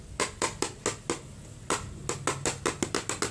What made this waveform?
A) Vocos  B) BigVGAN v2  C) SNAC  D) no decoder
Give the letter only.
D